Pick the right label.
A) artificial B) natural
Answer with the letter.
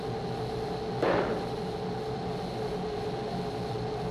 B